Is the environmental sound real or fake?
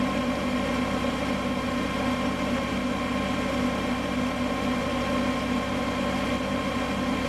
real